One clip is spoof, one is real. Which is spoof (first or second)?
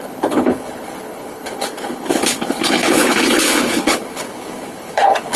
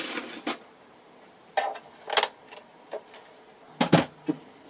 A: first